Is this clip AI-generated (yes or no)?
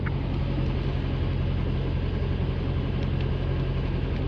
no